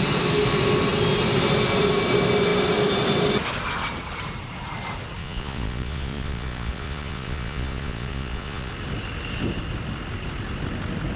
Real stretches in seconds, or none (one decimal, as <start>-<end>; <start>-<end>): 0.0-5.2; 8.7-11.2